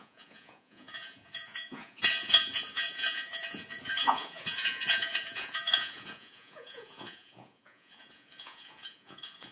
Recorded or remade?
remade